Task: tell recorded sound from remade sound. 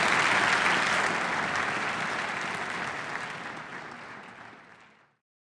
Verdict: recorded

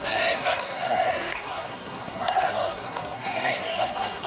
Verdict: remade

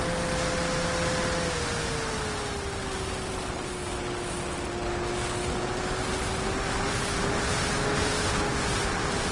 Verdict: recorded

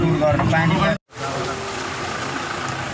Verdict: recorded